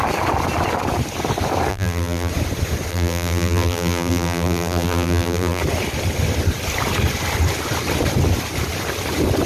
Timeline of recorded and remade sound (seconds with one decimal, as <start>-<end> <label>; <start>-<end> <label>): 0.0-1.7 recorded; 1.7-2.3 remade; 2.3-2.9 recorded; 2.9-5.6 remade; 5.6-9.5 recorded